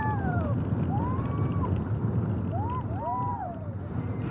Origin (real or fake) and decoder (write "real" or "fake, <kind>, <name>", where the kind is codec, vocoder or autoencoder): real